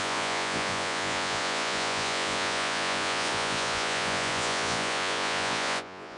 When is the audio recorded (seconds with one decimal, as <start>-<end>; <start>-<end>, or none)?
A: none